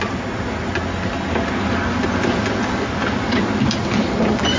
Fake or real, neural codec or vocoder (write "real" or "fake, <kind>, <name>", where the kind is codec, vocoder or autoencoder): real